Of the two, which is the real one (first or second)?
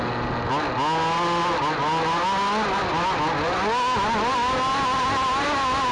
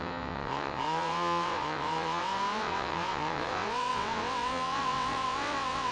first